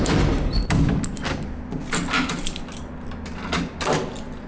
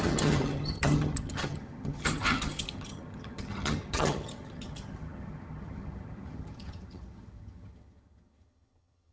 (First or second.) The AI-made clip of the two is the second